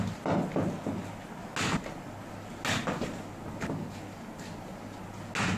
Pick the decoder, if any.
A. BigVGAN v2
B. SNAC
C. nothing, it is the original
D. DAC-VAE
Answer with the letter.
C